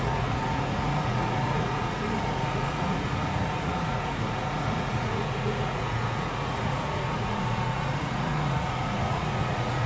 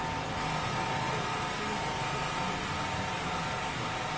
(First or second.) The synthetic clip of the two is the first